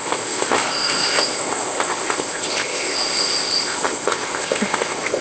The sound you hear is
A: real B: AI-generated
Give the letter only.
B